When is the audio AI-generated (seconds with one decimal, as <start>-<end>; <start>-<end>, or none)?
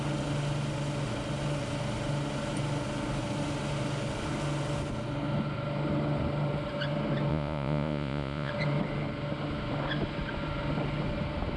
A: 7.3-8.5